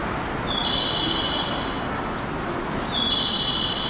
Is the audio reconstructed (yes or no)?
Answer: no